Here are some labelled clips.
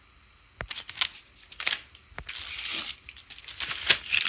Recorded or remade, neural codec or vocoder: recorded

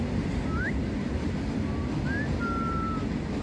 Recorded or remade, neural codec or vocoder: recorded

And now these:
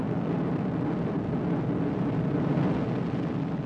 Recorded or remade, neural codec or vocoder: recorded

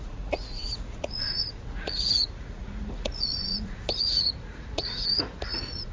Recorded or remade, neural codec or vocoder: remade, vocoder, Vocos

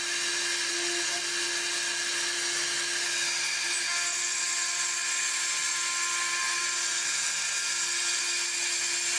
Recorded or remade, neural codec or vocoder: recorded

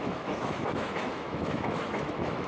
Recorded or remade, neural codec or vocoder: remade, autoencoder, DAC-VAE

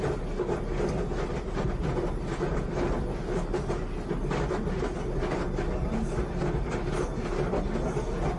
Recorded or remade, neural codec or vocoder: recorded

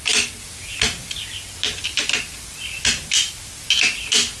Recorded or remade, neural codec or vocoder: recorded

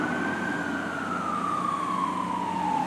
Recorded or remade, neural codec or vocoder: recorded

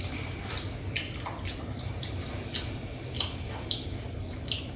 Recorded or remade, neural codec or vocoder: recorded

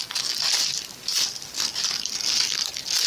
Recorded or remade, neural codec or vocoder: recorded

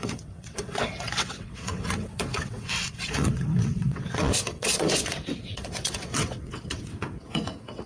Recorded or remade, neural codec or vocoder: remade, vocoder, WaveNeXt